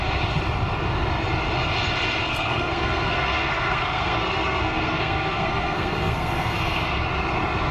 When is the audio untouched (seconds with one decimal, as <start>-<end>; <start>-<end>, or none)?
0.0-2.2; 6.8-7.7